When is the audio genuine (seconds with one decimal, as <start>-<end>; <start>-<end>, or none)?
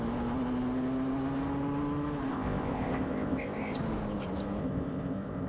0.0-2.3; 3.8-4.6